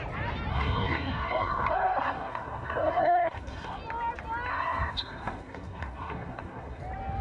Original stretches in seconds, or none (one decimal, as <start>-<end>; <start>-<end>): 0.0-0.5; 3.8-4.5; 6.8-7.2